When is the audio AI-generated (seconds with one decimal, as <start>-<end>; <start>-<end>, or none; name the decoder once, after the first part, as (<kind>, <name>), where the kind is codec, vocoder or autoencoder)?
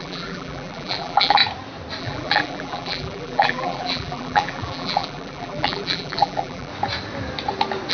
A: 0.0-1.4 (vocoder, BigVGAN v2); 2.0-6.7